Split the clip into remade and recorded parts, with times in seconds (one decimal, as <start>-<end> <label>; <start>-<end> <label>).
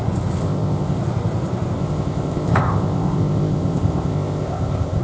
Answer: 0.0-0.4 recorded; 0.4-1.0 remade; 1.0-1.8 recorded; 1.8-5.0 remade